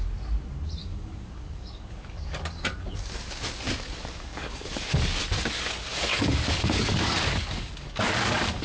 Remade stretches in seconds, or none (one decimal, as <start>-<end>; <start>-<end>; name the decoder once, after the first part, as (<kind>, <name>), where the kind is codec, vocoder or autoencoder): 0.8-5.2 (codec, DAC); 6.1-8.6